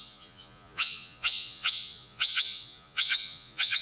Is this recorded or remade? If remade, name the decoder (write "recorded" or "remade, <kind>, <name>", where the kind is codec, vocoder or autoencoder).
remade, vocoder, Vocos